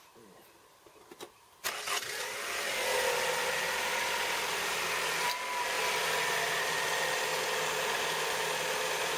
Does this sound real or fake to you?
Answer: real